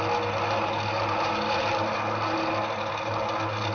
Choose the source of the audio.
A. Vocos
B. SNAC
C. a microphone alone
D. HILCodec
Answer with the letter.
C